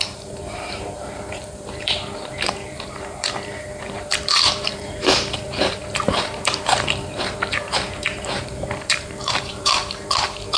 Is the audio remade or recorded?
remade